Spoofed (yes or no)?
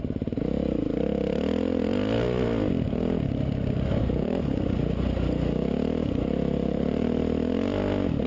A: no